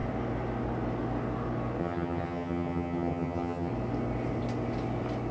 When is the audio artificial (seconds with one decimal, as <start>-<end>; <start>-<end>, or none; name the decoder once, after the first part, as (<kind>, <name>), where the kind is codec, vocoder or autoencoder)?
1.8-3.7 (vocoder, HiFi-GAN)